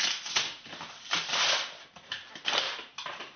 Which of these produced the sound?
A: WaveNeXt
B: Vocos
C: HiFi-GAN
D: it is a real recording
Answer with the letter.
D